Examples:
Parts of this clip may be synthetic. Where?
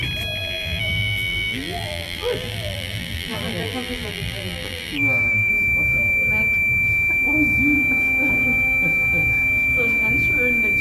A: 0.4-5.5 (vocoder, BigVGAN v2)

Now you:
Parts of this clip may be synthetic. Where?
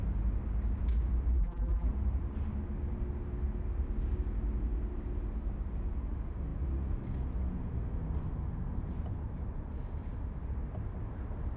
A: 1.4-1.9 (vocoder, BigVGAN v2)